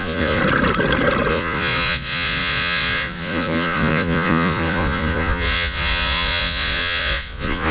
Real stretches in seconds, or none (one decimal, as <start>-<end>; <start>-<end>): 0.4-1.3